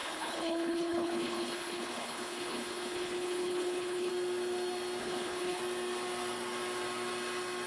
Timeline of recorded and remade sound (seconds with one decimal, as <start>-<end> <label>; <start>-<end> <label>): 0.0-4.1 remade; 4.1-5.0 recorded; 5.0-5.6 remade; 5.6-7.7 recorded